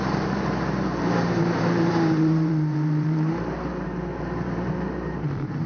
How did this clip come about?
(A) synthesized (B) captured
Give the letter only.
A